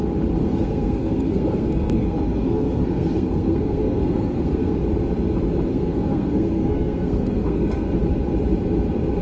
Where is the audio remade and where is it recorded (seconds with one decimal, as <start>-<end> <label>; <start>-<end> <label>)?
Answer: 0.0-0.4 recorded; 0.4-4.8 remade; 4.8-5.7 recorded; 5.7-7.9 remade; 7.9-9.2 recorded